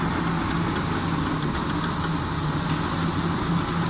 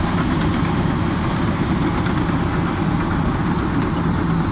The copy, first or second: second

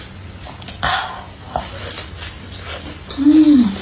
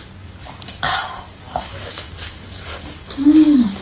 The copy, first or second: second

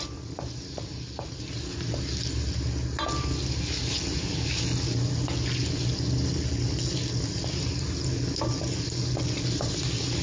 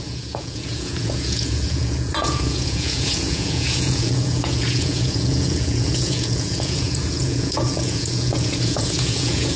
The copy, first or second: second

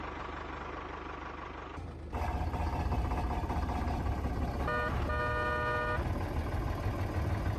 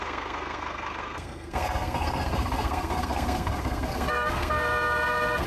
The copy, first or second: second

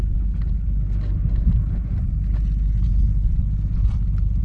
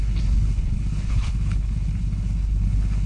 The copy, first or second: second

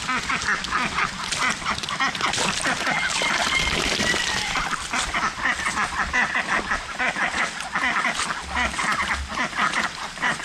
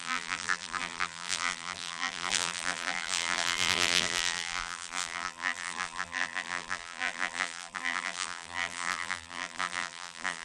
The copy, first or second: second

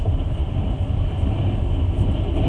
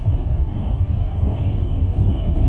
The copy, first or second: second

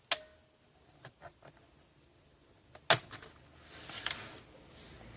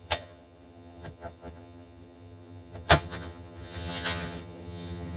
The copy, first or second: second